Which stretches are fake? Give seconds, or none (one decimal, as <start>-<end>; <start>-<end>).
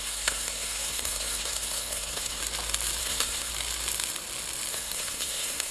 0.0-2.4; 3.0-3.5; 4.7-5.7